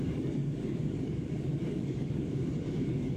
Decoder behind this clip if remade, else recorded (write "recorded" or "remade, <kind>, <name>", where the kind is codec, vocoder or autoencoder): remade, codec, DAC